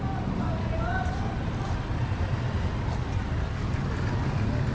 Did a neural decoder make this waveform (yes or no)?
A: no